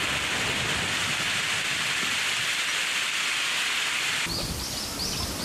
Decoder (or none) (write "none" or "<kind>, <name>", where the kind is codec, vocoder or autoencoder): vocoder, BigVGAN v2